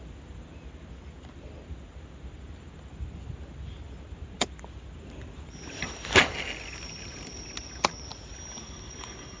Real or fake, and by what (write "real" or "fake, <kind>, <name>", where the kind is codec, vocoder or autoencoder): real